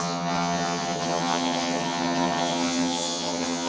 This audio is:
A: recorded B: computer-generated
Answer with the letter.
B